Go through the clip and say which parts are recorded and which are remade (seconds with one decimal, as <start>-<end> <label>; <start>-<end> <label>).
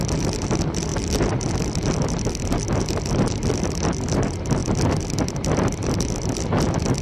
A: 0.0-7.0 recorded